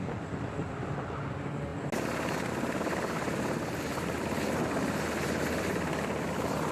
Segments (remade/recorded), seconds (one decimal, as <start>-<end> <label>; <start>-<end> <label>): 0.0-6.7 recorded